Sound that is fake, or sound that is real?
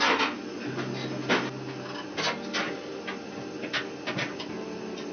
real